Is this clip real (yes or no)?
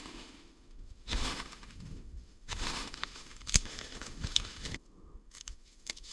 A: no